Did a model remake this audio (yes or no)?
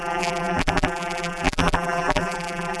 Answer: yes